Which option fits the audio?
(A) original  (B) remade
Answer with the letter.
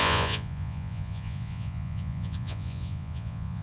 B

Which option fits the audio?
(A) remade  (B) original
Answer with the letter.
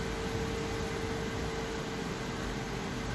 B